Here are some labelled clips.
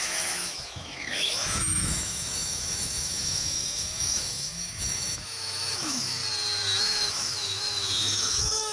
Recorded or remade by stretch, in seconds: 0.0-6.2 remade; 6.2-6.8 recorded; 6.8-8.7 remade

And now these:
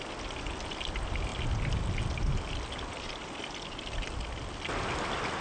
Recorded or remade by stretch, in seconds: 0.0-5.4 recorded

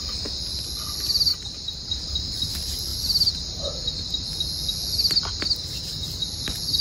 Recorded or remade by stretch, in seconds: 0.0-6.8 recorded

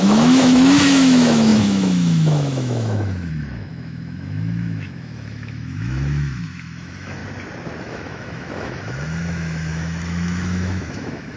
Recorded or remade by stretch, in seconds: 0.0-7.2 remade; 7.2-7.8 recorded; 7.8-11.4 remade

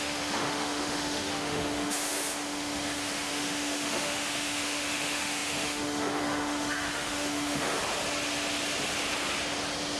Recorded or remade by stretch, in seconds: 0.0-7.8 remade; 7.8-10.0 recorded

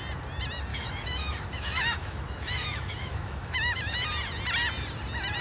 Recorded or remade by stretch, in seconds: 0.0-0.7 recorded; 0.7-3.9 remade; 3.9-5.4 recorded